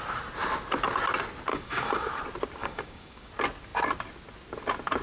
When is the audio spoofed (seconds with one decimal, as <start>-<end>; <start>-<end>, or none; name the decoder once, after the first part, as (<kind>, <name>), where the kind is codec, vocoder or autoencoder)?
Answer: 1.5-2.1 (codec, DAC); 2.6-3.3